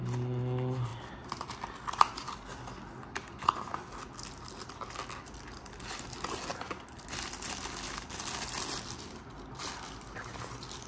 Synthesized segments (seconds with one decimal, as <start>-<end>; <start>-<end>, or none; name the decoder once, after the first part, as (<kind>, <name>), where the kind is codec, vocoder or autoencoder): none